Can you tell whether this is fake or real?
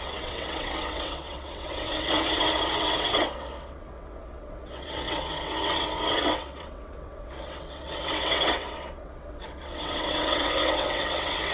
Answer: fake